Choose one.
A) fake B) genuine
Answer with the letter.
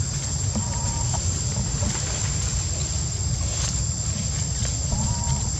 B